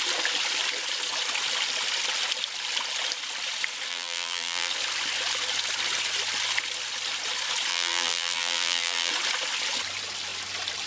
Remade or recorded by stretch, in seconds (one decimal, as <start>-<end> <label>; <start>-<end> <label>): 0.0-3.9 recorded; 3.9-4.7 remade; 4.7-7.7 recorded; 7.7-9.1 remade; 9.1-10.9 recorded